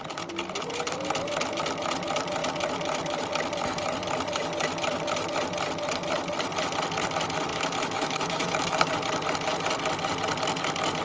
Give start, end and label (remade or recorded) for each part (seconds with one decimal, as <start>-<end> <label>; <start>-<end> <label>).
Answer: 0.0-7.5 recorded; 7.5-8.9 remade; 8.9-11.0 recorded